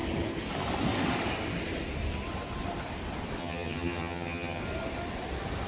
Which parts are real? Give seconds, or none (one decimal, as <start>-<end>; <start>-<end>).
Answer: 0.0-3.4; 4.6-5.7